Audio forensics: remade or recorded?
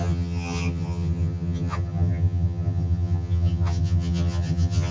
remade